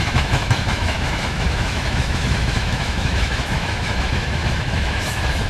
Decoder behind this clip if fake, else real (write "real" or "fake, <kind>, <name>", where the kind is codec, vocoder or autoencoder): fake, autoencoder, DAC-VAE